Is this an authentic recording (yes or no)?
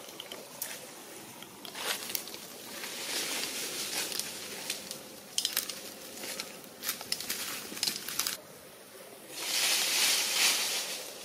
yes